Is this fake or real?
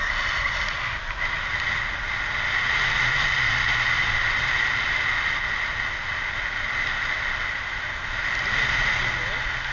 real